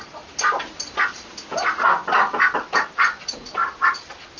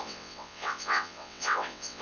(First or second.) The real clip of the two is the first